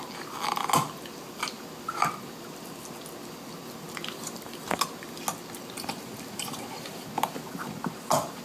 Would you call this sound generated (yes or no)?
no